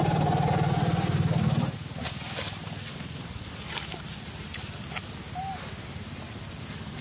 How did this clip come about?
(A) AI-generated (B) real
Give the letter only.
B